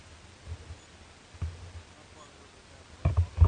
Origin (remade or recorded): recorded